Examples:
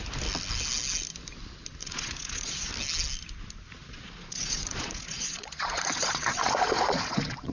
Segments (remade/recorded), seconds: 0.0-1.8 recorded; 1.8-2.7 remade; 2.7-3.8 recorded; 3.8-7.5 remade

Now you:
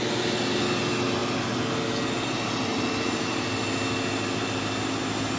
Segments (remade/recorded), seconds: 0.0-5.4 recorded

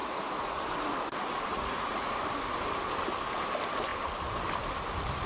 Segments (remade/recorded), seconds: 0.0-0.6 remade; 0.6-1.5 recorded; 1.5-2.1 remade; 2.1-5.3 recorded

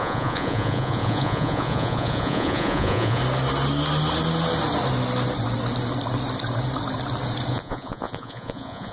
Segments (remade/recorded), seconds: 0.0-3.2 remade; 3.2-7.5 recorded; 7.5-8.9 remade

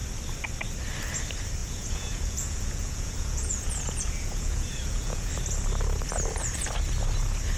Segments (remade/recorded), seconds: 0.0-1.6 recorded; 1.6-5.3 remade; 5.3-7.6 recorded